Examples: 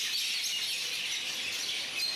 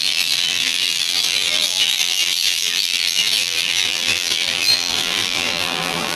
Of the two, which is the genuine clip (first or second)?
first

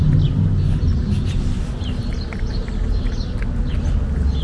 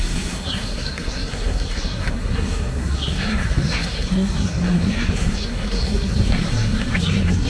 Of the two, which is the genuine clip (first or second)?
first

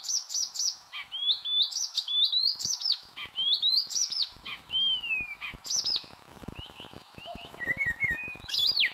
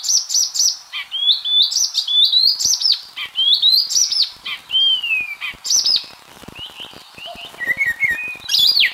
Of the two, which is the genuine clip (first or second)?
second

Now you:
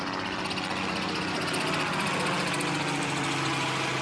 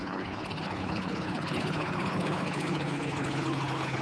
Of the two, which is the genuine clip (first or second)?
first